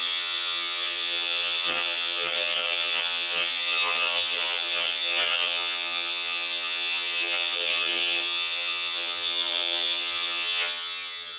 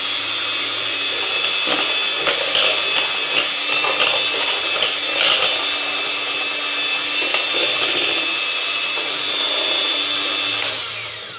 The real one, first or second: second